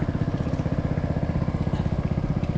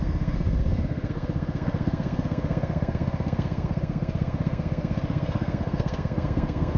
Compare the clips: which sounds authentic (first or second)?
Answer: first